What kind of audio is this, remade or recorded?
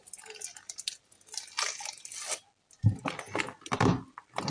recorded